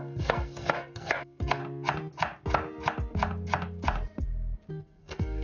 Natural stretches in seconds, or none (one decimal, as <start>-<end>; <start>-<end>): 1.6-4.7

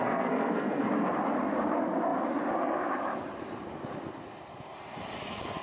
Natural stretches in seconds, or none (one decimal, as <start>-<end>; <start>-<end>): 0.9-5.6

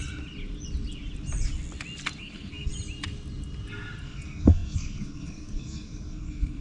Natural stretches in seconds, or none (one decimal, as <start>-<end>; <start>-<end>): 0.0-2.2; 2.7-4.0

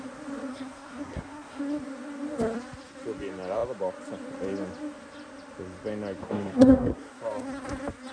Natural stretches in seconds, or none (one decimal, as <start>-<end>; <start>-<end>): 0.0-0.5; 1.6-6.2; 7.2-8.1